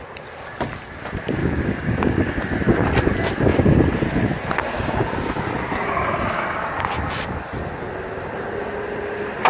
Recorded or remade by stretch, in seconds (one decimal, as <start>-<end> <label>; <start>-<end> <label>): 0.0-1.4 recorded; 1.4-2.4 remade; 2.4-9.5 recorded